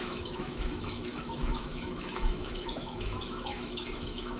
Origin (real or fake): fake